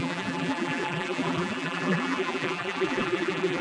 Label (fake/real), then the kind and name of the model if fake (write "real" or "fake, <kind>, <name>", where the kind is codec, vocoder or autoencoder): fake, vocoder, BigVGAN v2